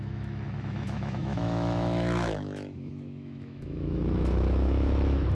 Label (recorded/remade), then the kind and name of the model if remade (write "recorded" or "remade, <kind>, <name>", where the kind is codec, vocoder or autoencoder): remade, autoencoder, DAC-VAE